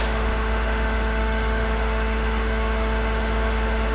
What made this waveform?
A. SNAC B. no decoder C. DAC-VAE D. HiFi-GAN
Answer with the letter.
C